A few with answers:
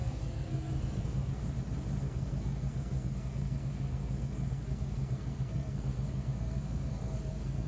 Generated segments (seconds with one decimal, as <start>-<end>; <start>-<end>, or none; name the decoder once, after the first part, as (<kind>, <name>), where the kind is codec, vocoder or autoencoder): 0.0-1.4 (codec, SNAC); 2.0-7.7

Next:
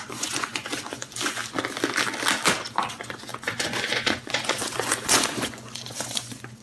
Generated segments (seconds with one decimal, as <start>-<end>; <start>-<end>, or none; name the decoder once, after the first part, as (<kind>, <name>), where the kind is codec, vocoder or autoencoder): 0.0-1.4 (vocoder, Vocos); 2.9-6.6

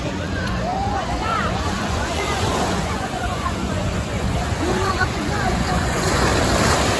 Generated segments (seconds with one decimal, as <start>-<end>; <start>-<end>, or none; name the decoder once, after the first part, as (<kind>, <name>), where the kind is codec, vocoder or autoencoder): 0.0-6.3 (vocoder, Vocos)

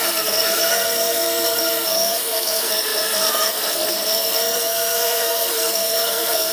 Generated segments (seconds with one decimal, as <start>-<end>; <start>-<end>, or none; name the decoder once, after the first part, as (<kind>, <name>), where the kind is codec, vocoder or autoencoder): 0.0-6.5 (codec, SNAC)

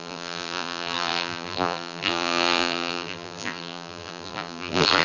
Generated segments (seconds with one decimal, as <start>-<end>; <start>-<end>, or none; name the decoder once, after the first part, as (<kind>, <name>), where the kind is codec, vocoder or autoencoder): 0.0-5.0 (vocoder, BigVGAN v2)